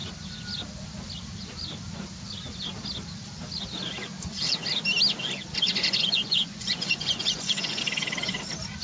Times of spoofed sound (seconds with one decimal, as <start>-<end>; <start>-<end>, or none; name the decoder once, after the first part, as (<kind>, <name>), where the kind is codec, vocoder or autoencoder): 5.8-7.8 (vocoder, Vocos)